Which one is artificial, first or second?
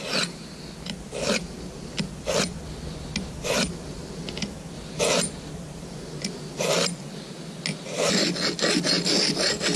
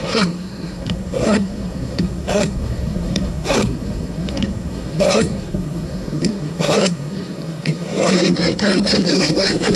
second